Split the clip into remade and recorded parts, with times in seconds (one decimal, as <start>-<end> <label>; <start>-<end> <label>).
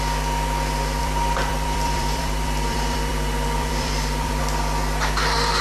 0.0-1.0 recorded; 1.0-4.4 remade; 4.4-5.6 recorded